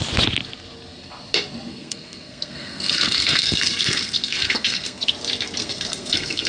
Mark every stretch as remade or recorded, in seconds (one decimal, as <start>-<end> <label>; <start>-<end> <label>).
0.0-1.7 recorded; 1.7-5.1 remade; 5.1-5.6 recorded; 5.6-6.5 remade